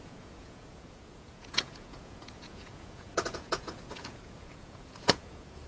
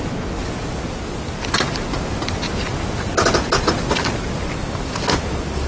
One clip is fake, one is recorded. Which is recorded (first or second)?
second